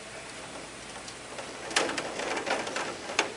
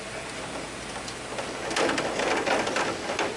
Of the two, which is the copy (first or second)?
first